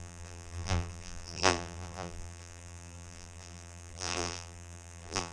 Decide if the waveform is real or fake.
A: fake